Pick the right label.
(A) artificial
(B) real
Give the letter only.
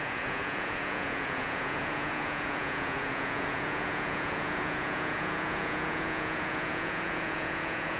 A